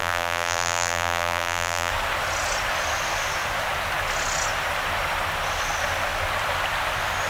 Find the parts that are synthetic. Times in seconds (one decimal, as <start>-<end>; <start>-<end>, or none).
0.0-1.9